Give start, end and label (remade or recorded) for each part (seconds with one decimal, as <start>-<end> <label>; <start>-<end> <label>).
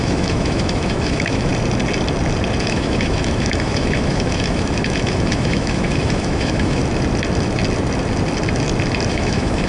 0.0-1.5 remade; 1.5-2.6 recorded; 2.6-6.8 remade; 6.8-9.1 recorded; 9.1-9.7 remade